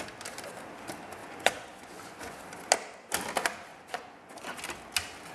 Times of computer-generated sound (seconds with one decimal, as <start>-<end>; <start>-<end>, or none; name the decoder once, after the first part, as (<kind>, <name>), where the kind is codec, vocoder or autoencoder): 1.2-2.4 (vocoder, Vocos); 3.7-4.6